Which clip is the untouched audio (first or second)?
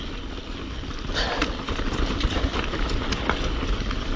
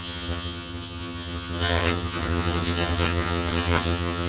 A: first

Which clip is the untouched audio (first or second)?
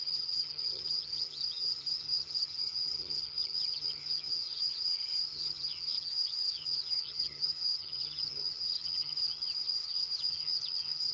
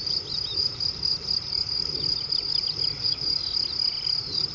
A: second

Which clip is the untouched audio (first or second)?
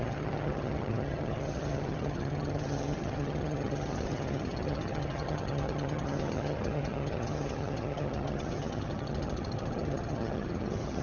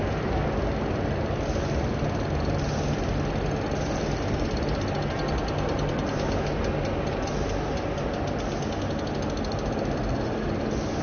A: second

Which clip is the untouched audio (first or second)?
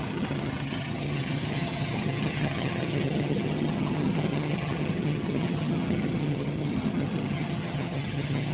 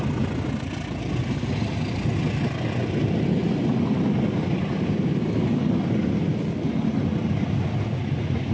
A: second